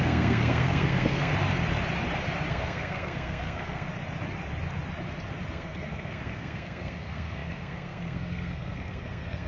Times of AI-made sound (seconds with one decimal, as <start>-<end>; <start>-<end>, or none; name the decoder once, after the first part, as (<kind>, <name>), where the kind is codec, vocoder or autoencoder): 0.0-1.3 (codec, SNAC); 2.5-3.9; 5.5-9.5